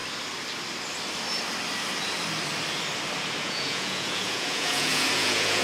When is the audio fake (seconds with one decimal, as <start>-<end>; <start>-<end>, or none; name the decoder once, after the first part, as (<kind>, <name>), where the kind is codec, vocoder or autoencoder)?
3.4-5.6 (vocoder, Vocos)